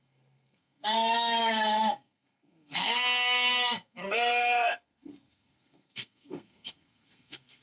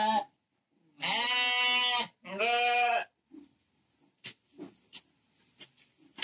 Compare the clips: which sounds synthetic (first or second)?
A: first